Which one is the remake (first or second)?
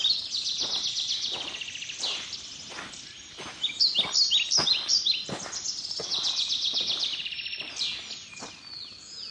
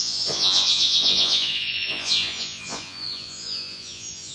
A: second